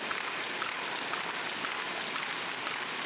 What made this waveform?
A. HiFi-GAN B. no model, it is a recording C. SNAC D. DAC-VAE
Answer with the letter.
B